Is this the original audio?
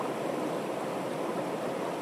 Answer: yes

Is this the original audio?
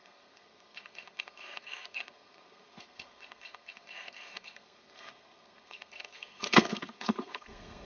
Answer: no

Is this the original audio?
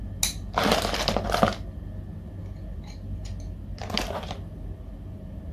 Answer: yes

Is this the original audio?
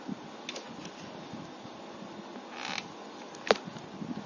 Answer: yes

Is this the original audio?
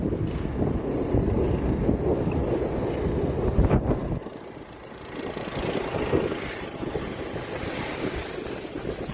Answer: yes